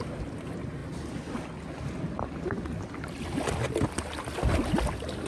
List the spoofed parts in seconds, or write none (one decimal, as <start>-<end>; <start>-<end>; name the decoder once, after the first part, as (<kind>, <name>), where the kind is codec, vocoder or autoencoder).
none